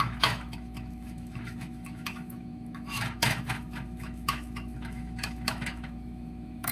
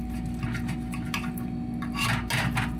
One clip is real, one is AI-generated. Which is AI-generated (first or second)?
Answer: first